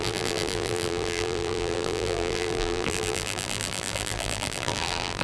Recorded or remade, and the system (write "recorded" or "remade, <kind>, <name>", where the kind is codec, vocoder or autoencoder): remade, vocoder, BigVGAN v2